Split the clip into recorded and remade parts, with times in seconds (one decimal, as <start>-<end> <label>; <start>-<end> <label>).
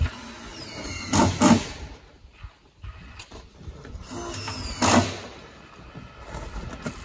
0.0-0.5 recorded; 0.5-3.9 remade; 3.9-7.0 recorded